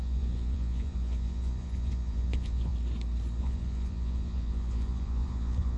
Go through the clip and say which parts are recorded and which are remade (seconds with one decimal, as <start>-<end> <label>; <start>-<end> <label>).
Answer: 0.0-2.7 remade; 2.7-3.4 recorded; 3.4-5.8 remade